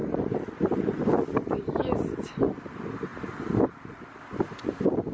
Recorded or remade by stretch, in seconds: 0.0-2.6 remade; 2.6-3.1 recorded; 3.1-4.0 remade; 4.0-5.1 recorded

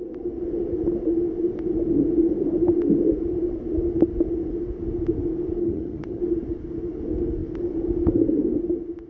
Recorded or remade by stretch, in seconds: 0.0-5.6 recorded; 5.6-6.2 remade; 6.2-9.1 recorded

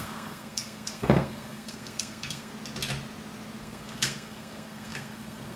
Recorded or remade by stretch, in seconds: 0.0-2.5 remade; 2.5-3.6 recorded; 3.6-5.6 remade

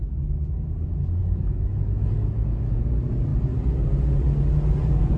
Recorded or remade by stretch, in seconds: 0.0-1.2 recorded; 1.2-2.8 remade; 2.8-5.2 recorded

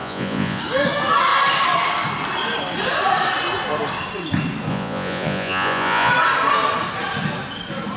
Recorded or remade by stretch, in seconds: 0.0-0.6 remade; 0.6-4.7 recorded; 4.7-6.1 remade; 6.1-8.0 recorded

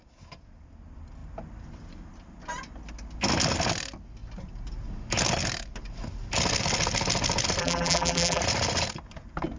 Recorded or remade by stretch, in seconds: 0.0-7.6 recorded; 7.6-8.4 remade; 8.4-9.6 recorded